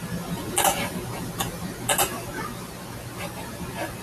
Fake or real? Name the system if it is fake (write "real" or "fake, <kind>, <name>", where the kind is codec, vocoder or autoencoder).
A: real